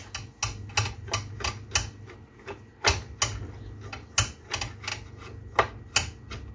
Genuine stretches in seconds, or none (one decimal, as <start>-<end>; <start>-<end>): 0.0-6.5